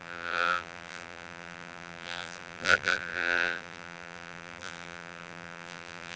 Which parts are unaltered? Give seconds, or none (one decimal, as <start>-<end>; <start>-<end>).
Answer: none

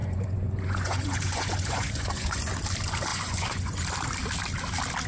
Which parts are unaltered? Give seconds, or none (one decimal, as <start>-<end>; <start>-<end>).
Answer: 2.5-3.1; 3.8-5.1

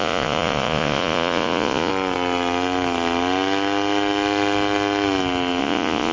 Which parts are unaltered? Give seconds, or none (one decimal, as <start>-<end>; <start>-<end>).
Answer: 1.9-5.6